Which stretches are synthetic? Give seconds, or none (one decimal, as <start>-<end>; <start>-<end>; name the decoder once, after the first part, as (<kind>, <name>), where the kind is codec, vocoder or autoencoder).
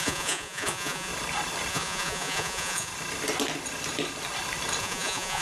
0.0-1.1 (vocoder, Vocos); 1.7-2.9; 4.8-5.4